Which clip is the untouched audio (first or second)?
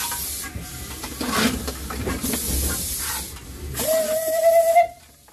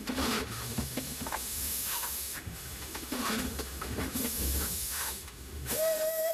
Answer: first